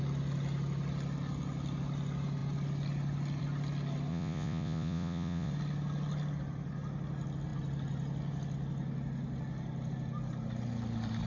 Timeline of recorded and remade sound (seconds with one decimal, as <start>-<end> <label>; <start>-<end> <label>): 0.0-4.1 recorded; 4.1-5.5 remade; 5.5-11.3 recorded